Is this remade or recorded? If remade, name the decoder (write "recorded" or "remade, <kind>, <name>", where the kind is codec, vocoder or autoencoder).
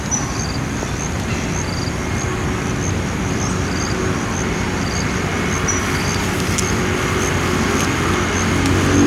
recorded